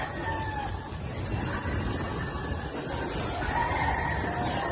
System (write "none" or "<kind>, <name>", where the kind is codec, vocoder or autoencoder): none